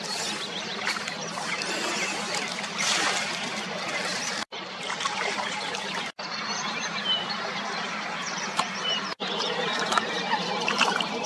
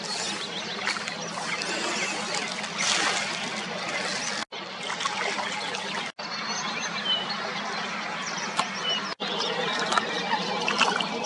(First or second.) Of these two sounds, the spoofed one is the first